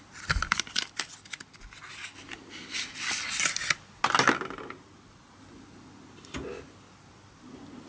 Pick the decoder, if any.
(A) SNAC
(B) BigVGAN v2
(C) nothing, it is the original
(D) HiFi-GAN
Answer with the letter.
C